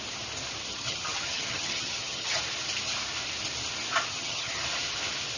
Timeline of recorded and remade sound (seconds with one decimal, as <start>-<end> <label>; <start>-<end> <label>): 0.0-0.7 recorded; 0.7-2.3 remade; 2.3-4.1 recorded; 4.1-4.6 remade; 4.6-5.4 recorded